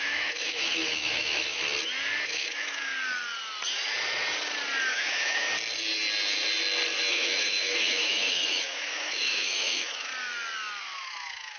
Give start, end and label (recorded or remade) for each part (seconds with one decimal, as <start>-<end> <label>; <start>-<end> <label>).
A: 0.0-1.6 remade; 1.6-2.2 recorded; 2.2-2.9 remade; 2.9-4.9 recorded; 4.9-5.5 remade; 5.5-7.1 recorded; 7.1-10.1 remade; 10.1-10.8 recorded; 10.8-11.6 remade